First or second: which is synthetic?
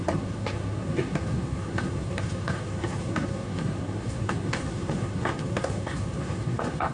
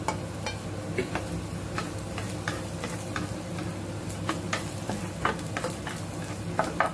first